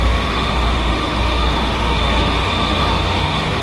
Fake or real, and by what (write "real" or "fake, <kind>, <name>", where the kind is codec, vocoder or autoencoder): fake, autoencoder, DAC-VAE